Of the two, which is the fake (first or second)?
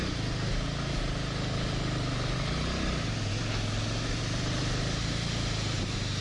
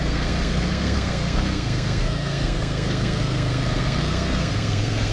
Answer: second